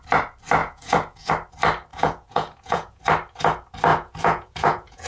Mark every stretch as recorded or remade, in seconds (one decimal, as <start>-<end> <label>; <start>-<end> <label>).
0.0-0.6 recorded; 0.6-1.3 remade; 1.3-1.9 recorded; 1.9-3.0 remade; 3.0-3.9 recorded; 3.9-5.1 remade